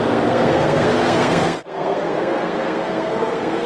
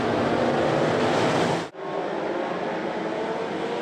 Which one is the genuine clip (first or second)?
second